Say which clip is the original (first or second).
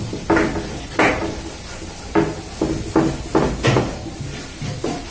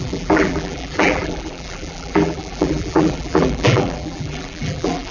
first